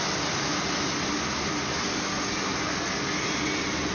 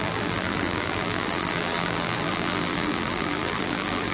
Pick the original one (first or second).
first